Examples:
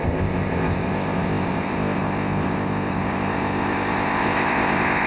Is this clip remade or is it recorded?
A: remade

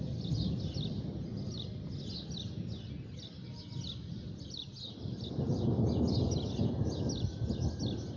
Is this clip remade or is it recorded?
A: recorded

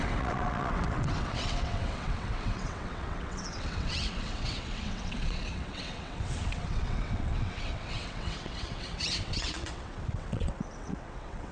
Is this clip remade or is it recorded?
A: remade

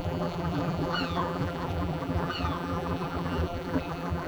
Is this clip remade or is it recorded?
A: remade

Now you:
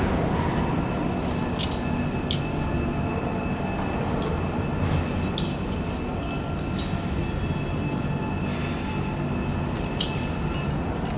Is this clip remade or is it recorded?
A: recorded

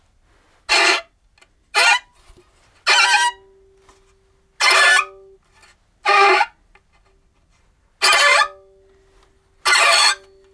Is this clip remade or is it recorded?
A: recorded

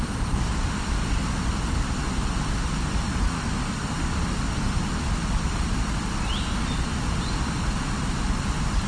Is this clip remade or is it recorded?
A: recorded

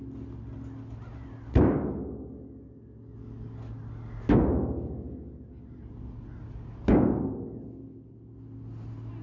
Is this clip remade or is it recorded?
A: recorded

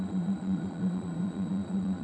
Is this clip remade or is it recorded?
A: remade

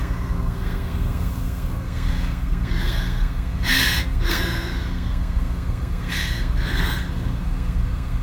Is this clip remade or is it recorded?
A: remade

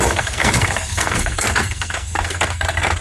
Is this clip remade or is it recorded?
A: remade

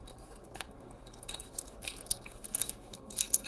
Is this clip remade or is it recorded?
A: remade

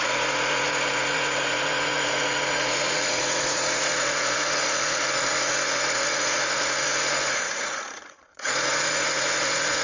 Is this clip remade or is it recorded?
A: remade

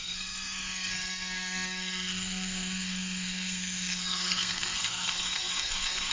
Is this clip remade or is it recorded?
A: remade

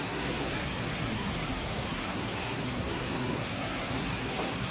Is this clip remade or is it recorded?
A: remade